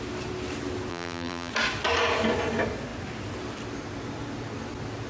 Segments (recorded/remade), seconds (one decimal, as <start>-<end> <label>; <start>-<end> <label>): 0.0-0.9 recorded; 0.9-1.5 remade; 1.5-5.1 recorded